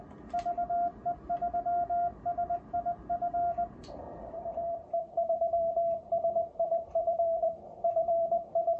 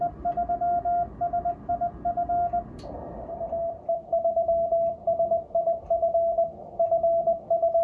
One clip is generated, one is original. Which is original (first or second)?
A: second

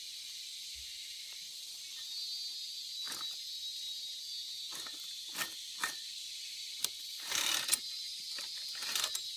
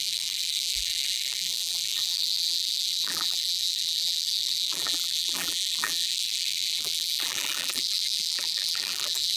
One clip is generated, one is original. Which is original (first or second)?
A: first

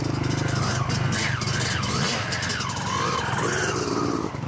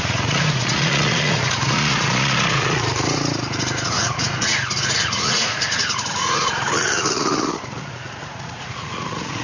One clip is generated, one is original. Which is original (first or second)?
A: first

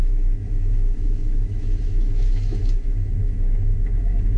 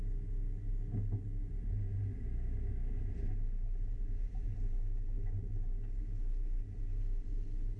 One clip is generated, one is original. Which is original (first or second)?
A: second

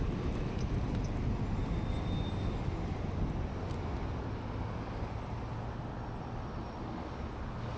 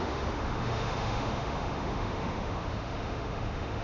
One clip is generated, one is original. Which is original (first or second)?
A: first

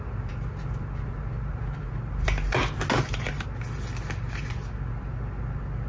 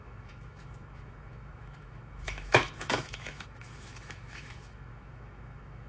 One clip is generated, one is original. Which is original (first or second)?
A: first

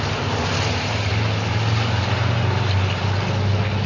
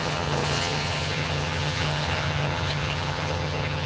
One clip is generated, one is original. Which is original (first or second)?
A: first